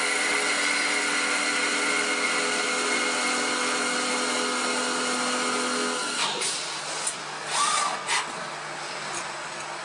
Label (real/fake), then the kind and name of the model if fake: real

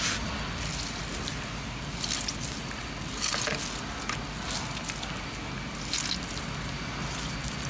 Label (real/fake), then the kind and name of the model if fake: real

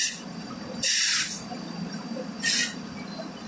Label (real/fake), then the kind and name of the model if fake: real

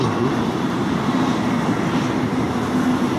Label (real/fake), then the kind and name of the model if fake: real